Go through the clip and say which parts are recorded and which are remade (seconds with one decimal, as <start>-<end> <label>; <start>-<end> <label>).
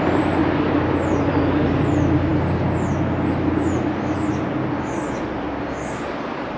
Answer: 0.0-6.6 recorded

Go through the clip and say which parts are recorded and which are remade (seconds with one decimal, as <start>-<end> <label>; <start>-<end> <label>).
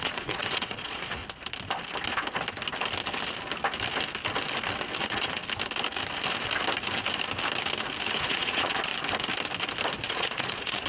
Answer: 0.0-1.2 remade; 1.2-5.0 recorded; 5.0-5.4 remade; 5.4-8.2 recorded; 8.2-8.9 remade; 8.9-10.1 recorded; 10.1-10.9 remade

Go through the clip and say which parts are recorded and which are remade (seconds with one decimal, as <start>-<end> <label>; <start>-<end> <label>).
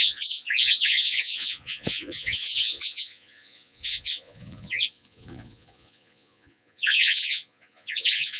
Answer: 0.0-8.4 remade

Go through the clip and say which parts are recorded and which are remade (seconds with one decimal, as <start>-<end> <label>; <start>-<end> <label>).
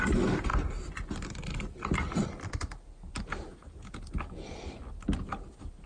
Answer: 0.0-5.9 recorded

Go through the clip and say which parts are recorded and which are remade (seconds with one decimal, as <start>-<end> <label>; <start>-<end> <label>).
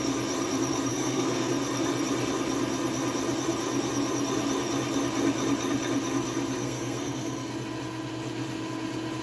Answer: 0.0-0.9 recorded; 0.9-1.5 remade; 1.5-6.6 recorded; 6.6-7.5 remade; 7.5-9.2 recorded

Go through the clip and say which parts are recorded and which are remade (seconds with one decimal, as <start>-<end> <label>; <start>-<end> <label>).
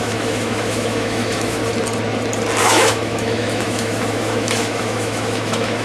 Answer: 0.0-1.6 remade; 1.6-2.6 recorded; 2.6-5.8 remade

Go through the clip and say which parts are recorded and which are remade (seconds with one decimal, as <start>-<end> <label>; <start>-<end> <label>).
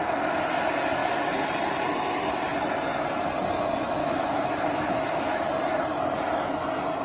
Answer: 0.0-4.0 recorded; 4.0-5.5 remade; 5.5-7.0 recorded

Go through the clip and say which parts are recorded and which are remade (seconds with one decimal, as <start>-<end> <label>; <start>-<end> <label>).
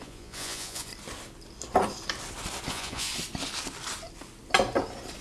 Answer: 0.0-0.9 remade; 0.9-2.7 recorded; 2.7-3.1 remade; 3.1-5.2 recorded